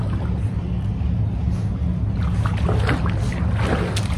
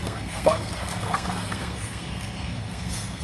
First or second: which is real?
first